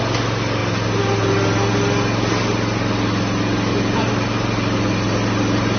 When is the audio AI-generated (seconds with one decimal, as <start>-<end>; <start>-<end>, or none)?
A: none